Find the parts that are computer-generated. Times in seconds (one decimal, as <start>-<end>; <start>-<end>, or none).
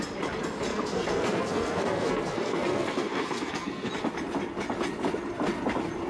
0.7-3.9